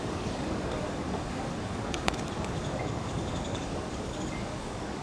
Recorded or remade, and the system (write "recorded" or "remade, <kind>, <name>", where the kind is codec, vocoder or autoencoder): remade, codec, DAC